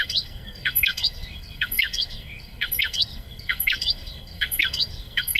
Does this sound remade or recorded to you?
remade